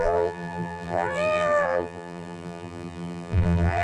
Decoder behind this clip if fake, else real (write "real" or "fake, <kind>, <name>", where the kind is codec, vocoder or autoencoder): fake, vocoder, BigVGAN v2